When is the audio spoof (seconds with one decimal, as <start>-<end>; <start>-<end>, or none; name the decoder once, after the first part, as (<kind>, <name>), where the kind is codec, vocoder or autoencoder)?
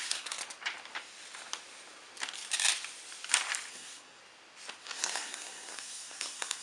0.0-0.4 (codec, SNAC); 3.7-4.2; 4.8-6.6